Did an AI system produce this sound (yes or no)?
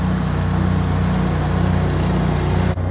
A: no